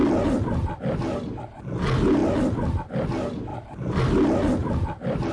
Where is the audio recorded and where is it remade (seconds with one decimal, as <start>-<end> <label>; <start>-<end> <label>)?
0.0-0.8 remade; 0.8-2.2 recorded; 2.2-2.8 remade; 2.8-3.5 recorded; 3.5-4.0 remade; 4.0-4.6 recorded; 4.6-5.3 remade